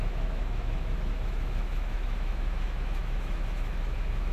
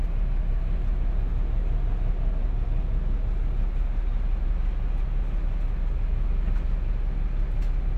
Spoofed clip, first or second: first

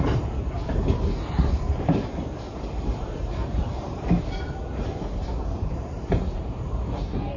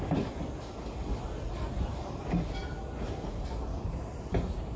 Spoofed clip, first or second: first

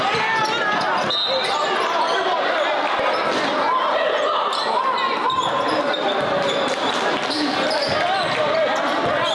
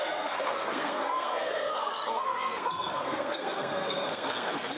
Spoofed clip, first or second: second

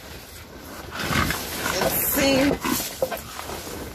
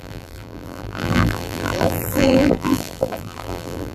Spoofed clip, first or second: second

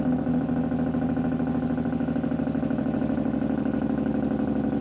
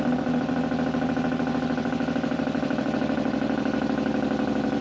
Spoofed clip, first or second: second